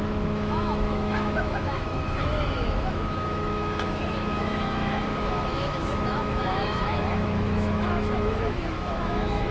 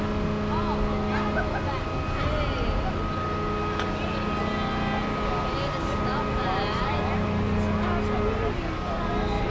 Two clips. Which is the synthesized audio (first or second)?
first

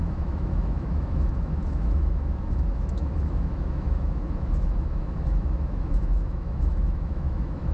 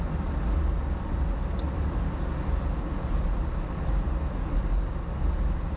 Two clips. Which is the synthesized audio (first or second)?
first